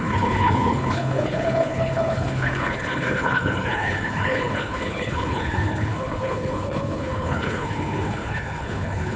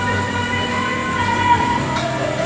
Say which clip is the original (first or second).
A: second